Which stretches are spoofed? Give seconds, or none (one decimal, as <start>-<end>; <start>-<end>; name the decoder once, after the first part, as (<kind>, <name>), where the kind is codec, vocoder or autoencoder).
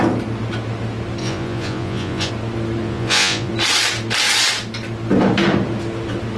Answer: 1.2-2.3 (vocoder, Vocos); 2.8-3.5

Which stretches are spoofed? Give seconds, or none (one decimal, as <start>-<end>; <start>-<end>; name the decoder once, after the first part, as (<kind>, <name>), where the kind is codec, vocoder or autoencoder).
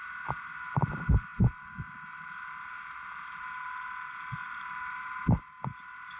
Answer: 4.4-5.6 (vocoder, BigVGAN v2)